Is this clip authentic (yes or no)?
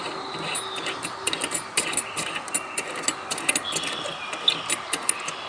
yes